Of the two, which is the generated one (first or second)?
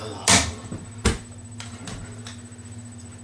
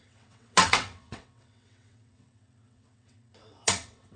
second